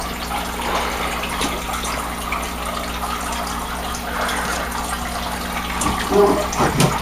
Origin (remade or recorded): recorded